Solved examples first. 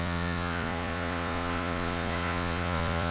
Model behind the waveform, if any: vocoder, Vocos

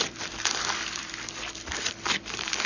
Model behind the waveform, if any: vocoder, BigVGAN v2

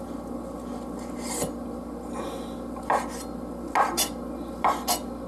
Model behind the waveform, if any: none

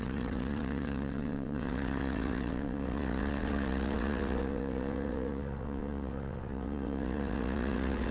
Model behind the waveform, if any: vocoder, WaveNeXt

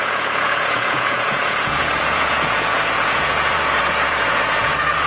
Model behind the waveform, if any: vocoder, Vocos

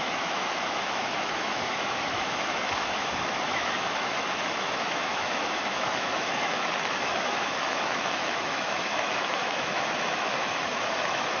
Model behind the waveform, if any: autoencoder, DAC-VAE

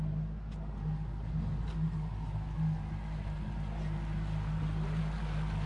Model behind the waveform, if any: none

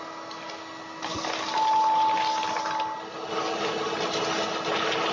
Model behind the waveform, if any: none